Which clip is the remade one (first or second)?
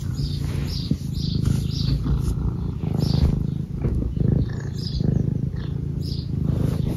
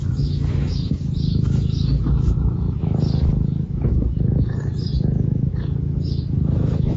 second